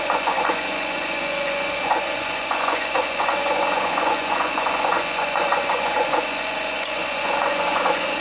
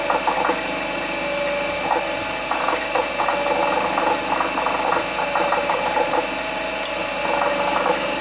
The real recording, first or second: second